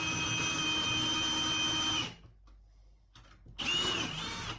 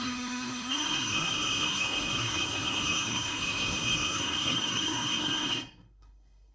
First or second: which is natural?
first